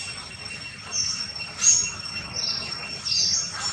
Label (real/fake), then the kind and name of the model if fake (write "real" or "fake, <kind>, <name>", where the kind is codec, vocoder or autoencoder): real